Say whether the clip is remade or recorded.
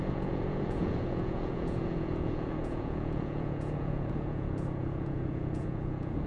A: remade